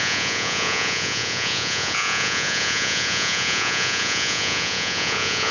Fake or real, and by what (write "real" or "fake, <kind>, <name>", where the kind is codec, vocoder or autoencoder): fake, vocoder, Vocos